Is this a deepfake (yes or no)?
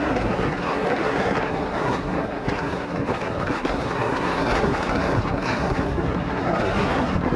yes